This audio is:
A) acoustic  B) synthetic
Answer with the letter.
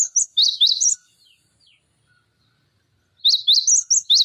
A